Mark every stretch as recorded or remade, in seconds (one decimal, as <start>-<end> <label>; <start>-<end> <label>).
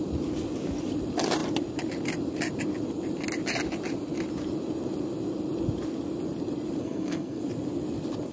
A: 0.0-6.8 recorded; 6.8-7.4 remade; 7.4-8.3 recorded